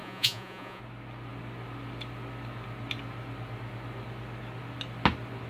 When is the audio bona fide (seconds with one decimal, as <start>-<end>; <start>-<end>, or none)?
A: 0.8-5.5